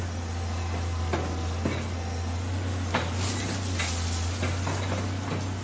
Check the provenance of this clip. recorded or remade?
recorded